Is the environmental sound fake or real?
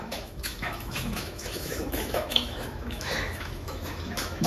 fake